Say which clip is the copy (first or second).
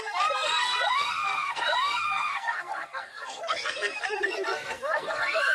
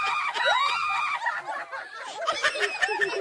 first